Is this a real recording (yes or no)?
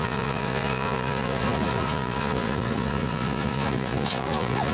no